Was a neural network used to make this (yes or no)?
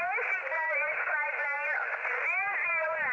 no